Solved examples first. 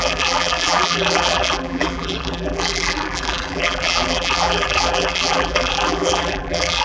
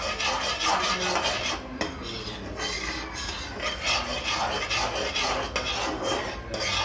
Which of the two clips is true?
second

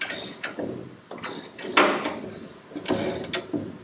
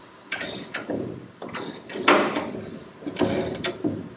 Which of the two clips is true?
first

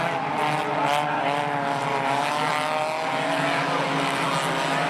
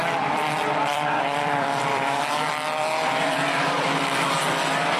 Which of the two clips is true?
first